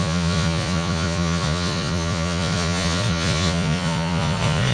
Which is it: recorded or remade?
remade